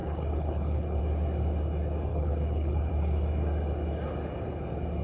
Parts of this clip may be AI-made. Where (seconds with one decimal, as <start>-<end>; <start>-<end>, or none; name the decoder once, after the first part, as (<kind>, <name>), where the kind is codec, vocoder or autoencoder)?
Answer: 0.0-1.0 (codec, HILCodec); 2.1-2.9